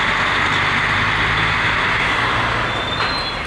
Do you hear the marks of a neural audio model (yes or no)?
no